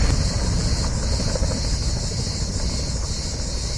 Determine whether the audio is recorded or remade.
recorded